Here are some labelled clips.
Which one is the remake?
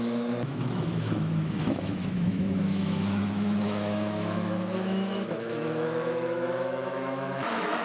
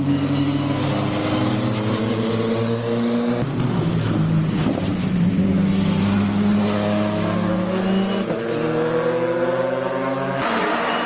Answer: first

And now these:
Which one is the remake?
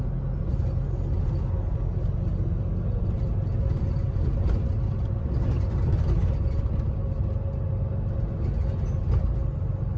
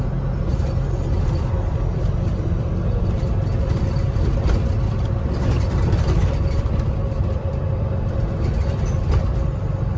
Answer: second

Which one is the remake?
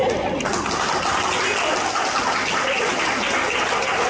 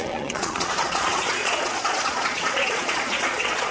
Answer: second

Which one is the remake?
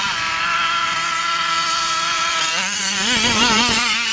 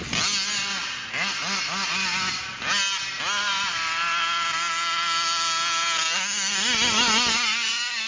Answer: first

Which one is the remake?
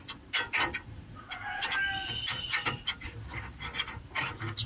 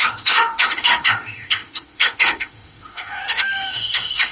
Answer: second